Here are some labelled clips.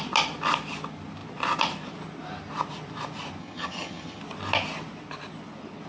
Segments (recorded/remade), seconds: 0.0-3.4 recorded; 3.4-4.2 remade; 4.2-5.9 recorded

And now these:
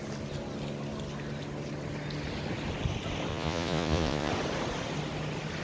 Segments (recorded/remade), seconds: 0.0-3.3 recorded; 3.3-4.3 remade; 4.3-5.6 recorded

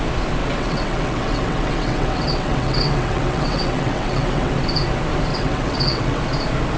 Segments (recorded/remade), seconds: 0.0-0.4 recorded; 0.4-4.5 remade; 4.5-5.3 recorded; 5.3-6.2 remade; 6.2-6.8 recorded